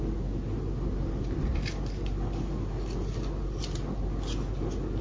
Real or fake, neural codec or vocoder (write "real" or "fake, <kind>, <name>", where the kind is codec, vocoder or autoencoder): real